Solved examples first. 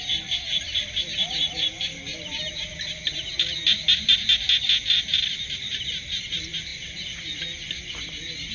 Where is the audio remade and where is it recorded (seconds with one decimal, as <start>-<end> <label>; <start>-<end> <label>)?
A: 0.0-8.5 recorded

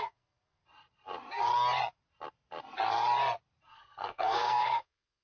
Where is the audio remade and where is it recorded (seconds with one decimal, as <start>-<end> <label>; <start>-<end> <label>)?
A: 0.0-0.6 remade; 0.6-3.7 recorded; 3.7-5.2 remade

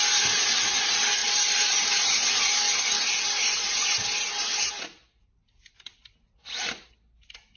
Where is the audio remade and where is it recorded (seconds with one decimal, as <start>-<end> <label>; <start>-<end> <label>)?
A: 0.0-1.2 recorded; 1.2-2.4 remade; 2.4-7.6 recorded

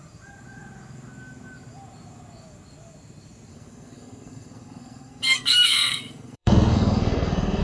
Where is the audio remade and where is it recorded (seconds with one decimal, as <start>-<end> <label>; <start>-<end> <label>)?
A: 0.0-3.5 recorded; 3.5-7.6 remade

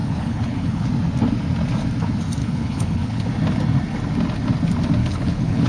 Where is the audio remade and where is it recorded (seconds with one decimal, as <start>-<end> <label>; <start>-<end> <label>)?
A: 0.0-0.9 remade; 0.9-2.4 recorded; 2.4-3.2 remade; 3.2-5.0 recorded; 5.0-5.7 remade